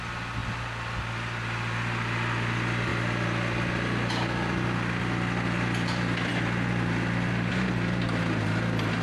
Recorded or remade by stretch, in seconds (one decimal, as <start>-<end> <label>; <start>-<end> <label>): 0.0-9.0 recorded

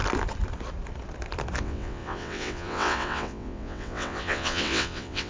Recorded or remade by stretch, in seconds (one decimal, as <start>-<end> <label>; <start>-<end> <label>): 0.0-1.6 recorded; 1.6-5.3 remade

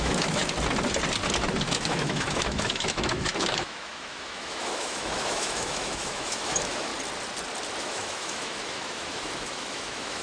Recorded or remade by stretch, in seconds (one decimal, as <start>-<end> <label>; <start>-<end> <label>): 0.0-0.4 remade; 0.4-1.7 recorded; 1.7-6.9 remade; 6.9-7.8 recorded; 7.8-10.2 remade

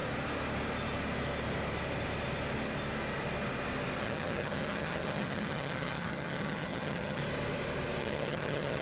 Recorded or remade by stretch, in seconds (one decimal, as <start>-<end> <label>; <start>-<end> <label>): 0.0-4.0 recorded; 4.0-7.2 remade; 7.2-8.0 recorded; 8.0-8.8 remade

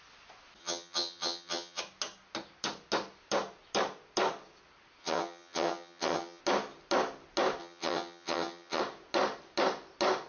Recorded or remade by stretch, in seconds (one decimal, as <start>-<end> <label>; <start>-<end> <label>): 0.0-0.6 recorded; 0.6-1.8 remade; 1.8-5.0 recorded; 5.0-6.4 remade; 6.4-7.6 recorded; 7.6-8.8 remade; 8.8-10.3 recorded